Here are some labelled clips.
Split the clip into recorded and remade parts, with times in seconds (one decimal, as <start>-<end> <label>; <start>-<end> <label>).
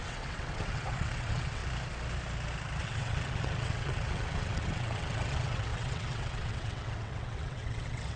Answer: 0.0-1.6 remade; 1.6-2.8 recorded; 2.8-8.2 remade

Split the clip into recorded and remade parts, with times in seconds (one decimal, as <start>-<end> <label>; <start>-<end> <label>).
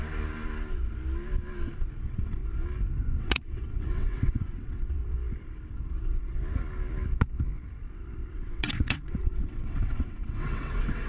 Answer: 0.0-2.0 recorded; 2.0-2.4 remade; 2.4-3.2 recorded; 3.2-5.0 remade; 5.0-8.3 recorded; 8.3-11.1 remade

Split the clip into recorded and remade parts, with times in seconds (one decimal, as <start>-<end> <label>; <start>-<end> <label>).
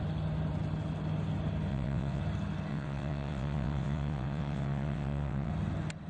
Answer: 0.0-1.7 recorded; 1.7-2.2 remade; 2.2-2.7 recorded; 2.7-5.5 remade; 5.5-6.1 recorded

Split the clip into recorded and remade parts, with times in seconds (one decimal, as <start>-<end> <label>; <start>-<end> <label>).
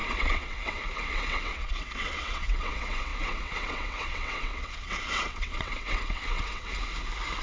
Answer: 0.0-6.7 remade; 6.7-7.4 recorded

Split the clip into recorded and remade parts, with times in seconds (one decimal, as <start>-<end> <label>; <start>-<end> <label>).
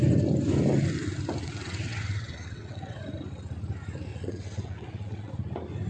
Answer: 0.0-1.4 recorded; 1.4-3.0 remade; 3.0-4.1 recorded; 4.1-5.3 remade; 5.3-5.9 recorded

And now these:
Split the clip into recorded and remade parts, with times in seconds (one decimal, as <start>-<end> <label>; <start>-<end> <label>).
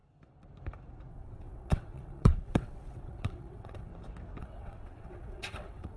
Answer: 0.0-1.1 recorded; 1.1-3.9 remade; 3.9-4.4 recorded; 4.4-6.0 remade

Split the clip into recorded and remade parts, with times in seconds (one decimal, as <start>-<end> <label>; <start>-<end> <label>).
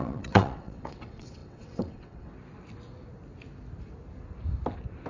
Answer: 0.0-2.3 remade; 2.3-5.1 recorded